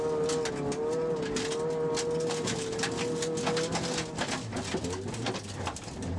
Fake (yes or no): no